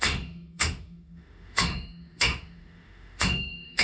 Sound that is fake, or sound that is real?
fake